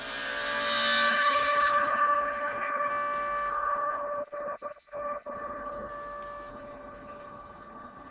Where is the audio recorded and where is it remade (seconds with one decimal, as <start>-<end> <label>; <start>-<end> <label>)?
0.0-1.1 recorded; 1.1-2.9 remade; 2.9-3.5 recorded; 3.5-5.9 remade; 5.9-6.5 recorded; 6.5-8.1 remade